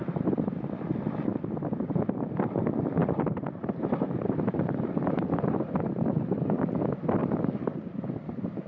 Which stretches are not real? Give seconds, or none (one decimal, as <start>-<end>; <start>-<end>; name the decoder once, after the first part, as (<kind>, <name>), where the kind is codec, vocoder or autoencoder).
3.0-5.8 (vocoder, BigVGAN v2); 7.2-8.0